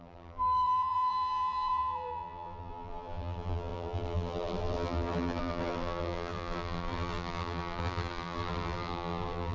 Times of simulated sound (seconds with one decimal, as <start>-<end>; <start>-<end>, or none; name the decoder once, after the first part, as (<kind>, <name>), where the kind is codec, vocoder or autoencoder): 0.0-9.5 (vocoder, BigVGAN v2)